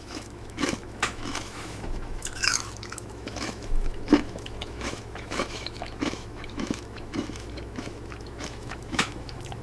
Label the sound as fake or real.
fake